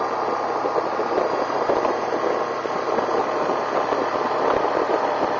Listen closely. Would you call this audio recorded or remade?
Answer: recorded